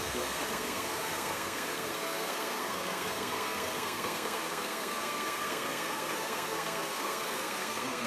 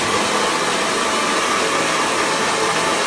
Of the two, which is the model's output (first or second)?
first